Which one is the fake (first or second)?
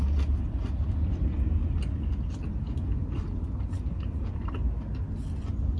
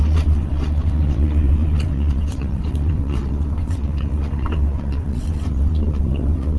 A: second